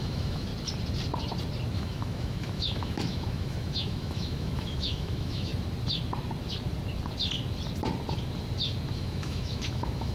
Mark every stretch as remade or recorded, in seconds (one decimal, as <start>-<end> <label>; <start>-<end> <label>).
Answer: 0.0-0.5 remade; 0.5-1.7 recorded; 1.7-5.5 remade; 5.5-8.9 recorded; 8.9-10.1 remade